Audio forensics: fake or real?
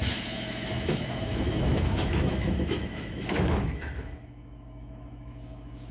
fake